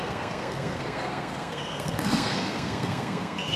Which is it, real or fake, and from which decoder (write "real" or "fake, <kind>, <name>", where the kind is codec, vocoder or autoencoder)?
fake, codec, SNAC